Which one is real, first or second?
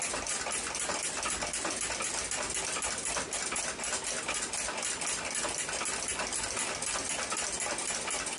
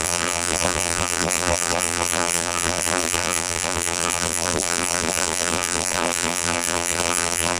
first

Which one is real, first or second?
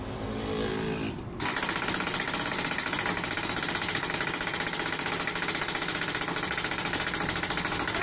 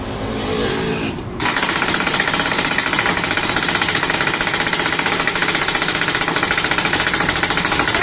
first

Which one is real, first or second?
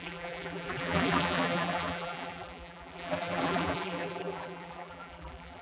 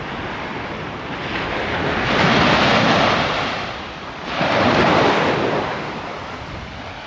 second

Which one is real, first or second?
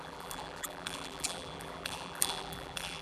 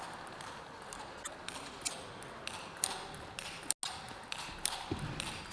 second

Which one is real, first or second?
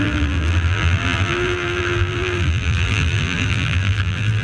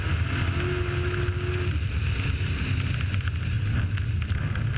second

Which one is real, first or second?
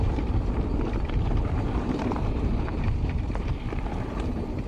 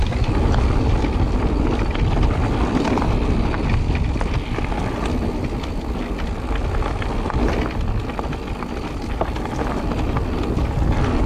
second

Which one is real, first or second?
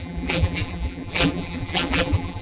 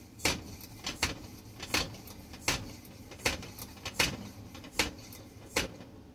second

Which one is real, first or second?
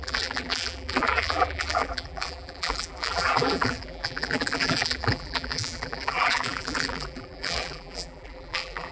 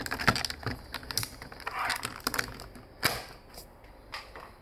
second